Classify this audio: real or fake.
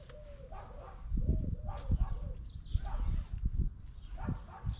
real